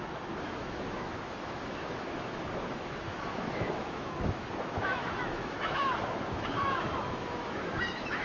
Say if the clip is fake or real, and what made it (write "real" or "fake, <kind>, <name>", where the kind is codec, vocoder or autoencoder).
fake, autoencoder, DAC-VAE